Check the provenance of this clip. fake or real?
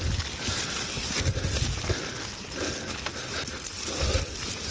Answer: real